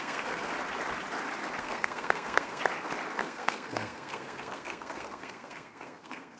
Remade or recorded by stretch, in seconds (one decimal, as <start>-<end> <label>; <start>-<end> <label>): 0.0-0.5 remade; 0.5-1.6 recorded; 1.6-2.6 remade; 2.6-3.2 recorded; 3.2-6.4 remade